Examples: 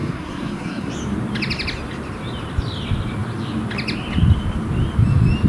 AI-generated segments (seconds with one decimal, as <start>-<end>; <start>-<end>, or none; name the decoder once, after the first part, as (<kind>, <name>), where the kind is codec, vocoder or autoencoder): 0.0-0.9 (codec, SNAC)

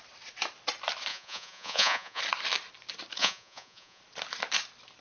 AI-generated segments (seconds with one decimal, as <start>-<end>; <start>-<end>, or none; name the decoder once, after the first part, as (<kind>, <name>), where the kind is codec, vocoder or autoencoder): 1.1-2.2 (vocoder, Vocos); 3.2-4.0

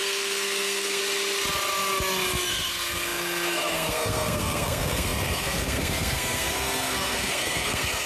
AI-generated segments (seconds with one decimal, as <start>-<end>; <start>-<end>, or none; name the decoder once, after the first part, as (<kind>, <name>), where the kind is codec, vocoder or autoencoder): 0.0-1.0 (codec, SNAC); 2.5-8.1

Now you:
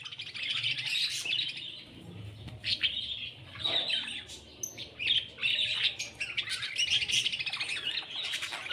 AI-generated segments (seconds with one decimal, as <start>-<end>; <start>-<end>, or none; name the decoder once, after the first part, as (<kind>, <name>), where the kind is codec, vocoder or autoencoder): none